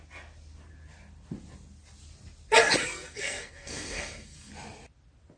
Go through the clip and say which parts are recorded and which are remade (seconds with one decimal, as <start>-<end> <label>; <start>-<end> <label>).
0.0-2.8 recorded; 2.8-4.5 remade; 4.5-5.4 recorded